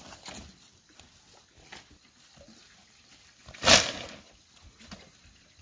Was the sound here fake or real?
real